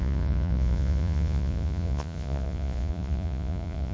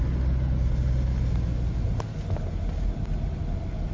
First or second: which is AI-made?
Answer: first